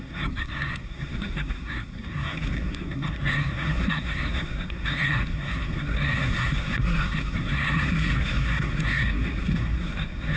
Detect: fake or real fake